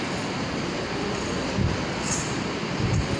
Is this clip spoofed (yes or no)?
yes